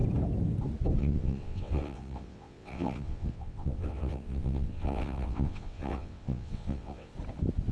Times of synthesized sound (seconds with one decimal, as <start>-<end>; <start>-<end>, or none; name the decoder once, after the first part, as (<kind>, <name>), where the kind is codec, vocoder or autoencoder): 1.0-7.1 (vocoder, WaveNeXt)